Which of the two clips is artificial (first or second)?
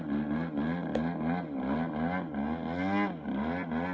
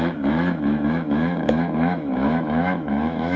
second